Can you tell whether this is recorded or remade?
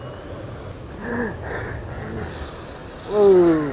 recorded